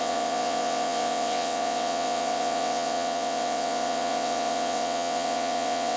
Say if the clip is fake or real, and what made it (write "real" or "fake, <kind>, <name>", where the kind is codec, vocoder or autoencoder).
fake, vocoder, WaveNeXt